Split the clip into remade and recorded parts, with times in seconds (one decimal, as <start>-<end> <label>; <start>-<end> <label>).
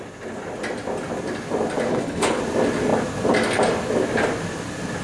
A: 0.0-1.9 recorded; 1.9-2.4 remade; 2.4-5.0 recorded